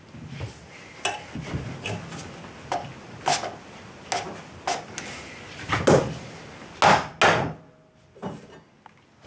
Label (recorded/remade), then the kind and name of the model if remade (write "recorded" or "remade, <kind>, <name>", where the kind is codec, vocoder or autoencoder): recorded